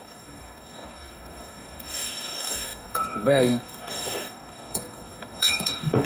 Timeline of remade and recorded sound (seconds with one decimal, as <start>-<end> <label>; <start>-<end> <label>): 0.0-6.1 remade